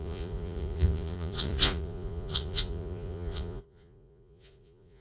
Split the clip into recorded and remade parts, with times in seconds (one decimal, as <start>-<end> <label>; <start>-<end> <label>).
0.0-5.0 remade